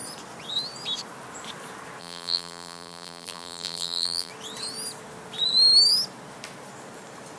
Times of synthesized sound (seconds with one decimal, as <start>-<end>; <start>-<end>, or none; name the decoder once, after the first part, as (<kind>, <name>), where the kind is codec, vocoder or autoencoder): 2.0-4.3 (vocoder, BigVGAN v2)